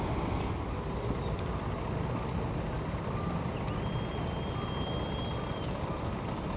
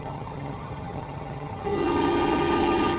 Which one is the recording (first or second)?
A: first